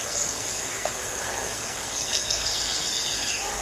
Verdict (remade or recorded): remade